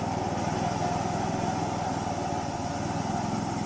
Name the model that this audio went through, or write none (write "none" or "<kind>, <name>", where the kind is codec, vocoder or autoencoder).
none